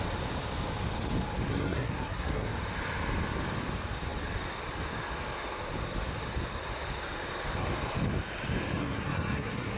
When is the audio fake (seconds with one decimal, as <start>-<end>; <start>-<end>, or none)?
1.5-2.5; 8.8-9.8